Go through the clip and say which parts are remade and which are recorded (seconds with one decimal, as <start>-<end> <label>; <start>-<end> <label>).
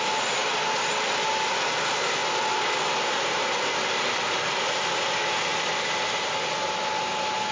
0.0-7.5 recorded